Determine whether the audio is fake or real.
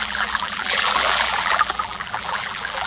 fake